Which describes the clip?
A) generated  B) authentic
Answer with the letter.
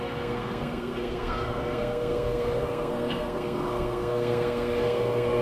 A